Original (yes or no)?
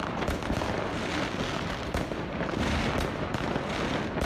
yes